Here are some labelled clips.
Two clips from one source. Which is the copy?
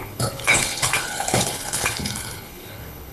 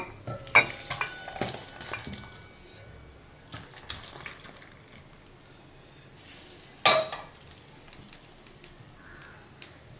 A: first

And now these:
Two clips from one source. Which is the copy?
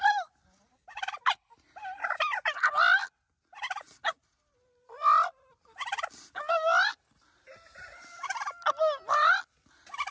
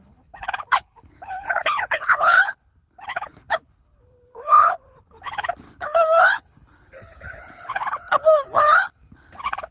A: second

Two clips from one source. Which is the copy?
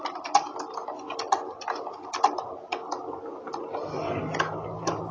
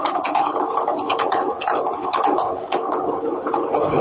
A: second